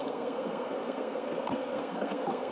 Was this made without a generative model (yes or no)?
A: no